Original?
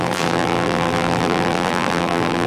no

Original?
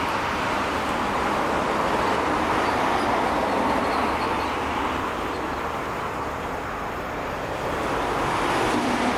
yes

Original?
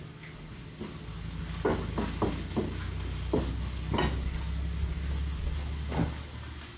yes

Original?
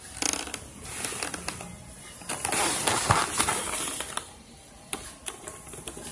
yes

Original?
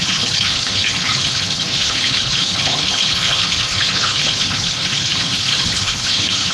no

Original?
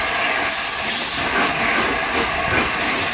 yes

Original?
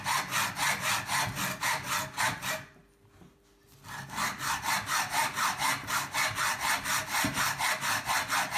yes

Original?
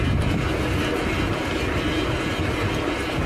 yes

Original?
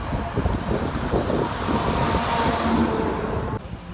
yes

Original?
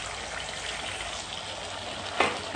yes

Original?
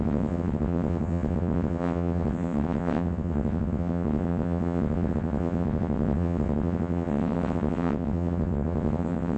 no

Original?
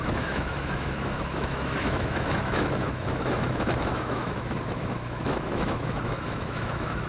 no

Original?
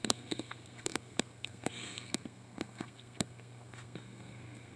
no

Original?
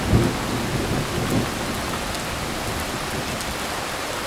yes